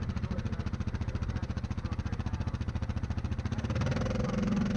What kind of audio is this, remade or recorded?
remade